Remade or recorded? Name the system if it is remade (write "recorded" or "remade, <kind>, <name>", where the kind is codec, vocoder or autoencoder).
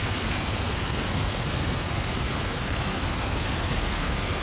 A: remade, codec, SNAC